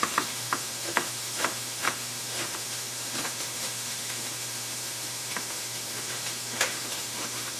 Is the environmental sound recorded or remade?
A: remade